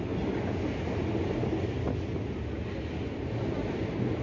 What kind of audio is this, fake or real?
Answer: real